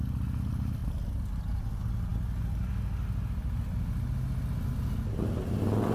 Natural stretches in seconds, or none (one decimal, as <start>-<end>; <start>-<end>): 0.0-0.8; 1.7-5.9